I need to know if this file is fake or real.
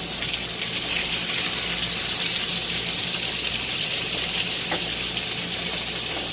real